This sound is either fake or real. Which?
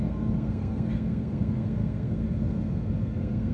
fake